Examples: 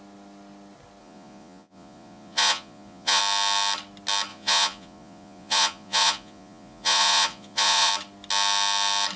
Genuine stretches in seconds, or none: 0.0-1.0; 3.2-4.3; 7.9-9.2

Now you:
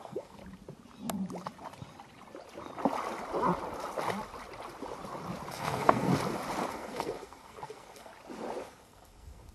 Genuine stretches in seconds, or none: 0.4-5.5; 6.1-6.7; 8.1-8.6

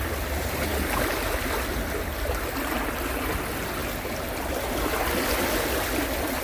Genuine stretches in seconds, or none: 0.0-6.4

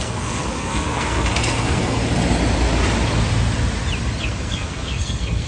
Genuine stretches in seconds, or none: 2.0-4.2

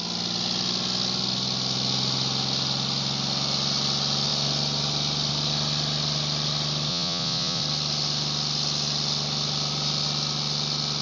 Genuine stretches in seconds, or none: 0.0-6.9; 7.6-11.0